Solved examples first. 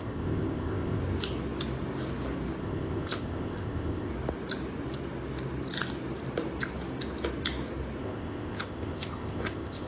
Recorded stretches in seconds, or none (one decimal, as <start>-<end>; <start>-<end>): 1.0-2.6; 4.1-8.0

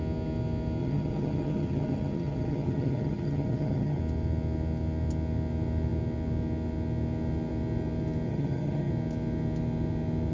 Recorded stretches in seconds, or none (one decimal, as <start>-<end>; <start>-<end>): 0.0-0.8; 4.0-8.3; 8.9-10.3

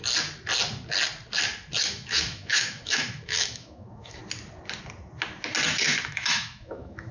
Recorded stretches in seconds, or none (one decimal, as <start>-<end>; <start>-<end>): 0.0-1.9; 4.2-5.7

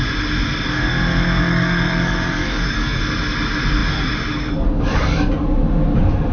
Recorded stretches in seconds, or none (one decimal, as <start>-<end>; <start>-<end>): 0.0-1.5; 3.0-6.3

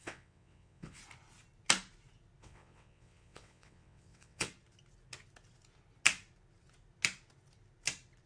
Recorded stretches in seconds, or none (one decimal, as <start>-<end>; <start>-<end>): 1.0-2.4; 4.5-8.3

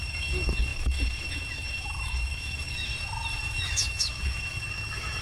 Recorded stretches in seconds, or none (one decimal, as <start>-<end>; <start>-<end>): 2.9-3.4

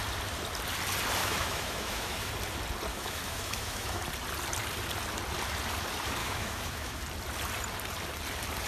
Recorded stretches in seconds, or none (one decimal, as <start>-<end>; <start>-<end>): 0.0-1.2; 2.3-2.9; 4.0-6.2; 7.0-8.7